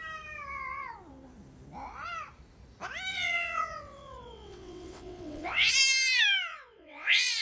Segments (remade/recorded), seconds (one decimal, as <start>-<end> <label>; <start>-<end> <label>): 0.0-3.1 recorded; 3.1-5.7 remade; 5.7-6.5 recorded; 6.5-7.4 remade